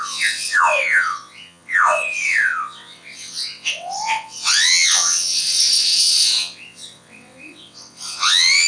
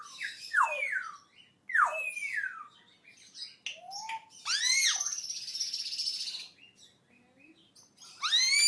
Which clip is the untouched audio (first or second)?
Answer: second